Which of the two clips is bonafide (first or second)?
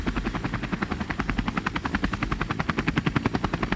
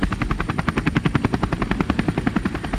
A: first